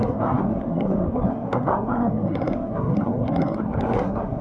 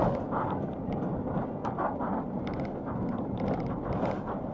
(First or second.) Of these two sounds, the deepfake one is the first